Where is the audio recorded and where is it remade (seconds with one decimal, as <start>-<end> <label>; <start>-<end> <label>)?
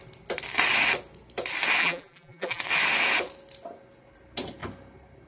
0.0-1.8 recorded; 1.8-2.6 remade; 2.6-5.3 recorded